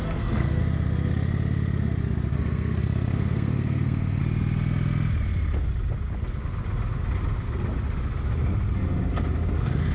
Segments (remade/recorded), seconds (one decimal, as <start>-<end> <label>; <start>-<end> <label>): 0.0-0.6 remade; 0.6-2.3 recorded; 2.3-4.2 remade; 4.2-9.9 recorded